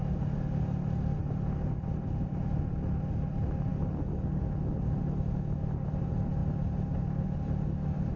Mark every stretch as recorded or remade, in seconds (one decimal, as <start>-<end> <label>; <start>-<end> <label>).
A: 0.0-3.7 recorded; 3.7-4.4 remade; 4.4-8.2 recorded